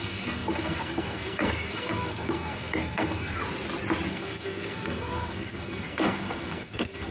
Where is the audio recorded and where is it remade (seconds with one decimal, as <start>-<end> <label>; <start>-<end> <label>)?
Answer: 0.0-3.4 remade; 3.4-4.1 recorded; 4.1-7.1 remade